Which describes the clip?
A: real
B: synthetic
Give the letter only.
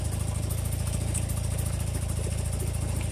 A